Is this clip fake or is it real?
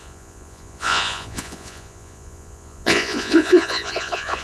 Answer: fake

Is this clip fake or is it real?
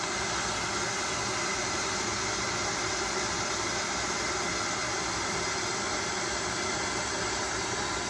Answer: real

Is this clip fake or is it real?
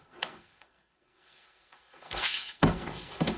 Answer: fake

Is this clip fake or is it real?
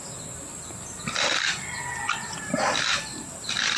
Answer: real